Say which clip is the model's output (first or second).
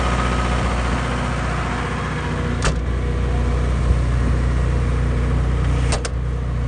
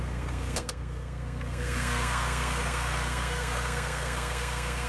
second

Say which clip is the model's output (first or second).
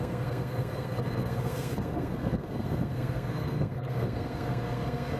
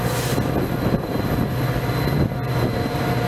first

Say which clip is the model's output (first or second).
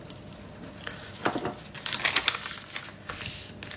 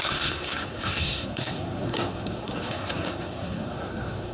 second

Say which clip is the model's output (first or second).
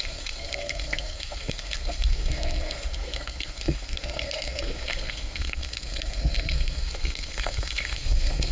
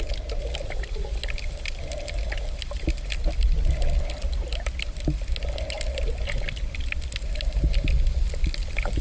first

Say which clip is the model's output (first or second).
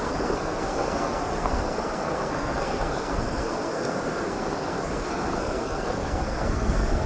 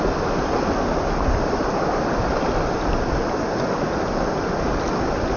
first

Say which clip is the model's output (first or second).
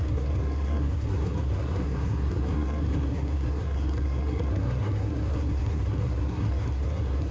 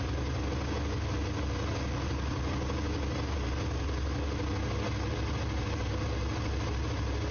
first